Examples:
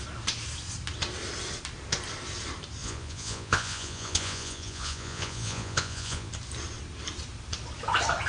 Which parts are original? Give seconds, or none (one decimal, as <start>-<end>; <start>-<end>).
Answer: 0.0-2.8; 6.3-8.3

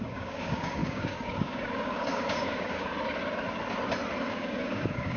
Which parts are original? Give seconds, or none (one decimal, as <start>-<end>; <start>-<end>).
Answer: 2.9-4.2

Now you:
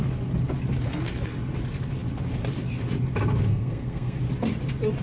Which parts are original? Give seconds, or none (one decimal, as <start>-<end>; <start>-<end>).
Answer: 0.0-3.5; 4.2-5.0

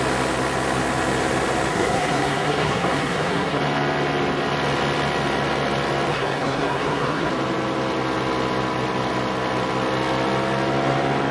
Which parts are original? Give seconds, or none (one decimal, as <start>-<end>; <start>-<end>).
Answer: 0.0-1.7; 3.6-6.1; 7.3-11.3